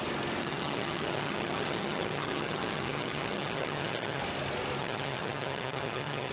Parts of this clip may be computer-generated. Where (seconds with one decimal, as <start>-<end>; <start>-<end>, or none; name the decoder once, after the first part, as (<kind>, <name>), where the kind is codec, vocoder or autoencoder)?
0.4-4.2 (vocoder, HiFi-GAN); 4.8-6.3